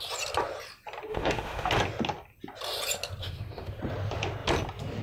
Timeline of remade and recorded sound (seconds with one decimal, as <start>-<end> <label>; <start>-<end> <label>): 0.0-1.1 recorded; 1.1-1.7 remade; 1.7-3.2 recorded; 3.2-3.8 remade; 3.8-5.0 recorded